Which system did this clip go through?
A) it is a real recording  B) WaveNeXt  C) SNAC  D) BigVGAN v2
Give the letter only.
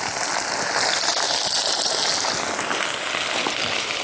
A